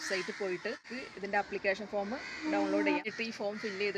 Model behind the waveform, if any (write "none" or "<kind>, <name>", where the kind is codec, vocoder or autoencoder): none